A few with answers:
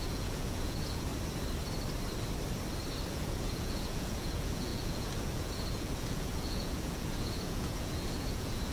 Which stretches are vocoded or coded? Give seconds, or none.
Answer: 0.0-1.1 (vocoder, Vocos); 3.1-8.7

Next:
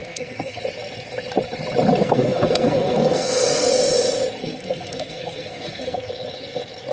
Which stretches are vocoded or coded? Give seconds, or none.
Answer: 0.0-0.6 (codec, SNAC); 2.0-3.7; 4.4-6.1

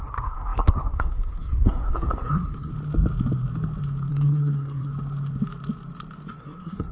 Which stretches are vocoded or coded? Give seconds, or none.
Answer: 0.0-2.7 (codec, SNAC); 4.1-4.9; 6.3-6.9

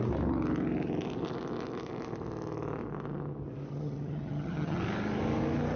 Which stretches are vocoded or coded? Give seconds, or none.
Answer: 3.7-4.8 (vocoder, HiFi-GAN)

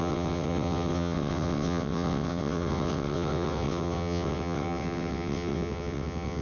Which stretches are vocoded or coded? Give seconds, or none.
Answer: 0.0-6.4 (vocoder, WaveNeXt)